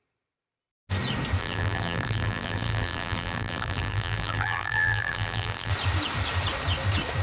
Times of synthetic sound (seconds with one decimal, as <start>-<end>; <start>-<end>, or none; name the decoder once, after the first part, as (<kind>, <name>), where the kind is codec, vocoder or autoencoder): 1.4-5.7 (vocoder, BigVGAN v2)